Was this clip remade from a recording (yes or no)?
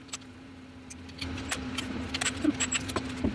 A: no